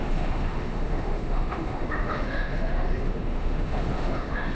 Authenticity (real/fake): fake